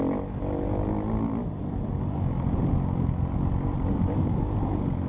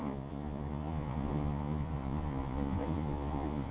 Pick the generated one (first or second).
second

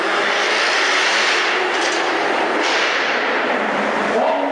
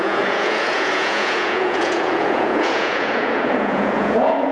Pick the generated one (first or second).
second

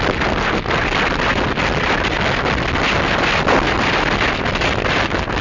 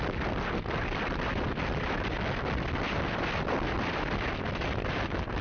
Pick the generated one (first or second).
second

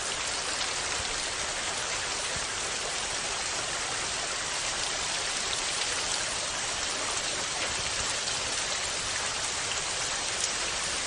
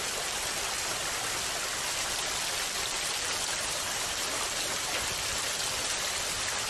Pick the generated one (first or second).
first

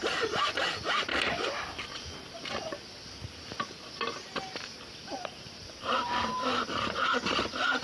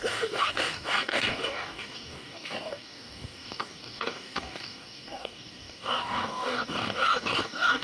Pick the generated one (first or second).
second